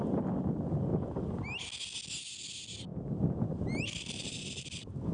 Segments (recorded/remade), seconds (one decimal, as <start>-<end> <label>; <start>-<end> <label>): 0.0-2.9 recorded; 2.9-5.1 remade